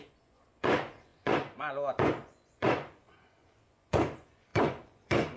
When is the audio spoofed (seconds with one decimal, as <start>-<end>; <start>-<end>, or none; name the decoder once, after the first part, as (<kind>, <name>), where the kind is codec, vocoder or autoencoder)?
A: 0.0-5.4 (vocoder, Vocos)